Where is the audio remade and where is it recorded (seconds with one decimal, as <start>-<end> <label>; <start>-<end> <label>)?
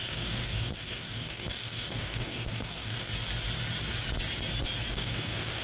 0.0-3.1 remade; 3.1-4.9 recorded; 4.9-5.6 remade